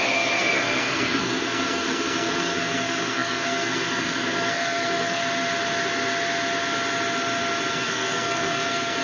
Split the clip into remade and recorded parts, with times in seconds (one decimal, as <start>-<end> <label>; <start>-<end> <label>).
0.0-5.2 remade; 5.2-7.7 recorded; 7.7-9.0 remade